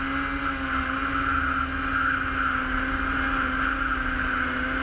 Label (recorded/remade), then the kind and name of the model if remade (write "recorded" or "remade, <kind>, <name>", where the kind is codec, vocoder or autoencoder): recorded